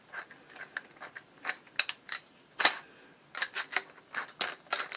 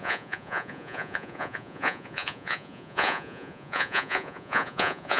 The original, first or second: first